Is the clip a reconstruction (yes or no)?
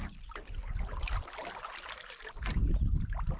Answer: no